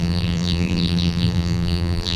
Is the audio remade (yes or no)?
yes